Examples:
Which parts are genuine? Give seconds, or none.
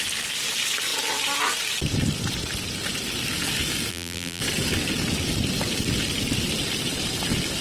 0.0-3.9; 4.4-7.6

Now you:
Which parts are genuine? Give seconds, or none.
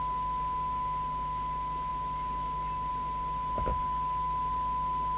0.0-5.2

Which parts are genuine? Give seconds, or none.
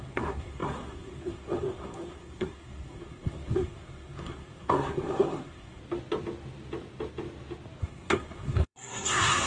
5.8-7.8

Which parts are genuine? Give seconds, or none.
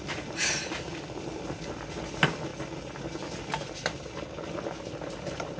0.0-5.6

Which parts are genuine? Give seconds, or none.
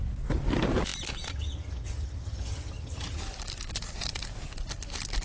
0.0-1.3; 3.2-5.2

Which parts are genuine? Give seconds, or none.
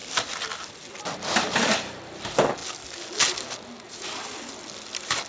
0.0-5.3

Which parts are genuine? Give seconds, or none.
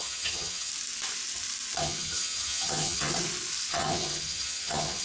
0.7-1.8; 3.1-3.7